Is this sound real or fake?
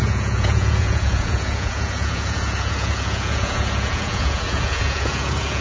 fake